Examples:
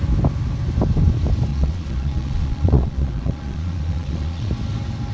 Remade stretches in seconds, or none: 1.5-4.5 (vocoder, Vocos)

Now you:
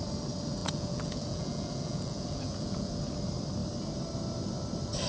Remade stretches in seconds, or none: 0.6-2.9 (vocoder, Vocos)

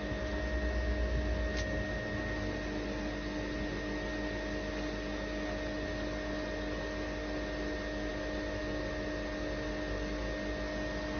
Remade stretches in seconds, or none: none

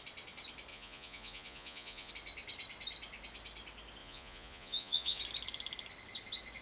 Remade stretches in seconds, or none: 0.7-2.1 (vocoder, Vocos); 4.0-5.2

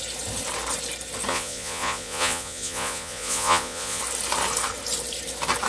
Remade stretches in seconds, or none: 1.3-4.0 (vocoder, Vocos)

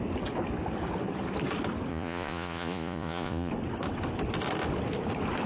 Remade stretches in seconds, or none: 1.9-3.5 (vocoder, Vocos)

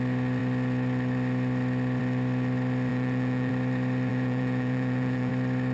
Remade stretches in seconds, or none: 2.9-3.5 (vocoder, Vocos); 4.1-5.3